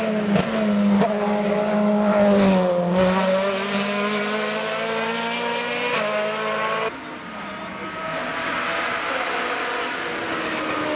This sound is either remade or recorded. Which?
recorded